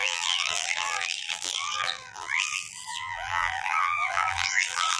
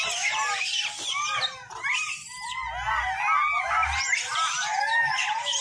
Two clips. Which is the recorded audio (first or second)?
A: second